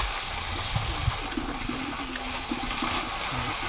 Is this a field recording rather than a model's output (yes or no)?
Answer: yes